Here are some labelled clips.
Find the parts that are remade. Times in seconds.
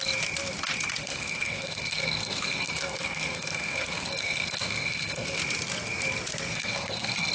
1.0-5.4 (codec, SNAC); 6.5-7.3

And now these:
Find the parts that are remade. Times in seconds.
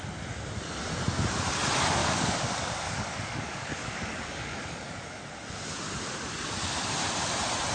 2.0-5.2 (codec, DAC)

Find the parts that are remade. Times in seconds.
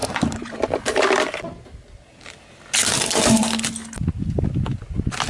0.0-0.8 (vocoder, BigVGAN v2); 2.8-3.4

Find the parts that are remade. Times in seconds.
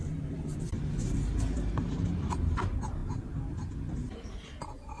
0.0-0.9 (vocoder, BigVGAN v2)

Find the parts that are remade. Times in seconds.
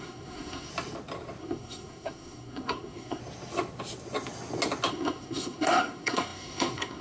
0.0-0.7 (codec, SNAC); 1.4-3.2; 4.9-7.0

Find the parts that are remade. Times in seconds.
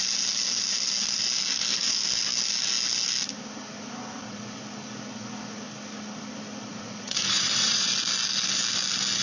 6.7-7.9 (vocoder, Vocos)